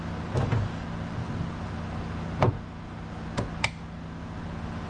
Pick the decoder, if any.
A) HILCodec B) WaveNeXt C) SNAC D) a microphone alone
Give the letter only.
D